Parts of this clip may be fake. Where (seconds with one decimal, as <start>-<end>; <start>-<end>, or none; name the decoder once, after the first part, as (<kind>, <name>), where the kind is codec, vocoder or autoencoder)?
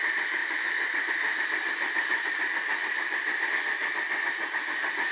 none